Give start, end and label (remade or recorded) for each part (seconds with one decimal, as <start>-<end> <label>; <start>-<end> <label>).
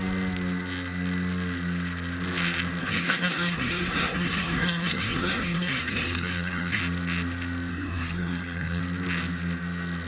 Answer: 0.0-2.8 recorded; 2.8-6.8 remade; 6.8-7.7 recorded; 7.7-8.8 remade; 8.8-10.1 recorded